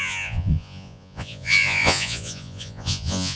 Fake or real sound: fake